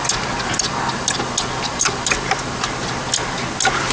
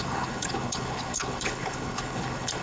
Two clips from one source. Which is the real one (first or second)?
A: first